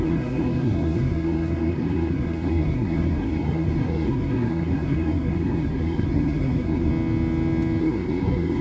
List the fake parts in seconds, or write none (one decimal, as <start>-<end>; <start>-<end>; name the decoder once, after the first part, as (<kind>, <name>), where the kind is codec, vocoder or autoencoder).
0.0-6.9 (codec, SNAC); 7.8-8.6